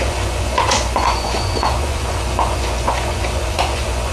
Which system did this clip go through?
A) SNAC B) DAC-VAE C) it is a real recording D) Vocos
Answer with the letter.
D